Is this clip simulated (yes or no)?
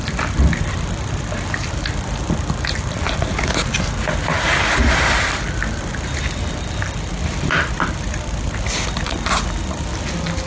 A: no